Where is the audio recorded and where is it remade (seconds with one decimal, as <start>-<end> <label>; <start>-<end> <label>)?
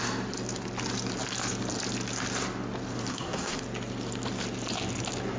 0.0-3.1 recorded; 3.1-3.6 remade; 3.6-5.4 recorded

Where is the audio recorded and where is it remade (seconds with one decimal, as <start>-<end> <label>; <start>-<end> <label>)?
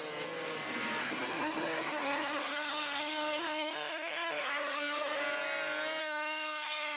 0.0-1.0 recorded; 1.0-5.2 remade; 5.2-6.0 recorded; 6.0-7.0 remade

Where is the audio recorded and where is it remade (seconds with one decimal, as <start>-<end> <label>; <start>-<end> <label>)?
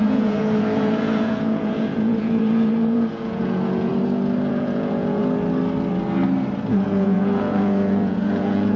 0.0-3.9 remade; 3.9-4.5 recorded; 4.5-5.2 remade; 5.2-6.7 recorded; 6.7-8.8 remade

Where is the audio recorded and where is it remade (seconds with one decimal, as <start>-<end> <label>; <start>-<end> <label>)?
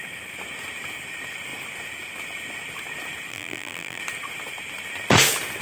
0.0-3.3 recorded; 3.3-4.0 remade; 4.0-5.6 recorded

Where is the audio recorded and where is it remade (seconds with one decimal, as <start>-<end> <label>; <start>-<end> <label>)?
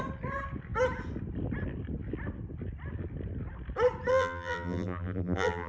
0.0-4.1 recorded; 4.1-5.7 remade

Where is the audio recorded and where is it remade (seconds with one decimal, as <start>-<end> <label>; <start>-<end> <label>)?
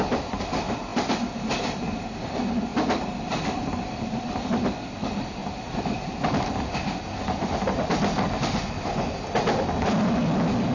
0.0-0.9 recorded; 0.9-1.5 remade; 1.5-2.7 recorded; 2.7-4.9 remade; 4.9-5.4 recorded; 5.4-6.3 remade; 6.3-10.7 recorded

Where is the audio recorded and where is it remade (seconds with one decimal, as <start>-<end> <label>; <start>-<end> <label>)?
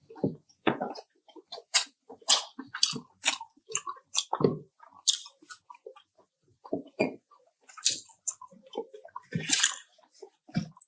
0.0-0.4 recorded; 0.4-2.4 remade; 2.4-6.6 recorded; 6.6-7.8 remade; 7.8-10.9 recorded